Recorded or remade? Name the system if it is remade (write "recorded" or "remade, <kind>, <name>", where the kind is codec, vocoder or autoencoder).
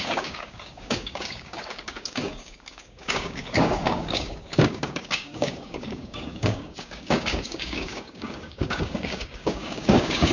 remade, codec, DAC